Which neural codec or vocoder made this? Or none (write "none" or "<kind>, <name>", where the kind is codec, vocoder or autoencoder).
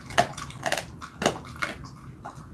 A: none